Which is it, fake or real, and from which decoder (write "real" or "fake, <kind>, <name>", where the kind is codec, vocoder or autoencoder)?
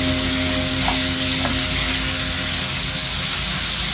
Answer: real